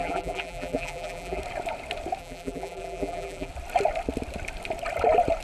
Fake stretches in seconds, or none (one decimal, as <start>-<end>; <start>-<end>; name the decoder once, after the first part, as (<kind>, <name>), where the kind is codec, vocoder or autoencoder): 0.0-1.4 (vocoder, BigVGAN v2); 2.2-3.5